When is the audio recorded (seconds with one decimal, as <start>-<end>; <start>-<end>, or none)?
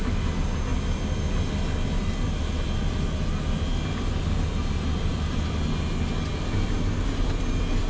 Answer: 0.0-7.9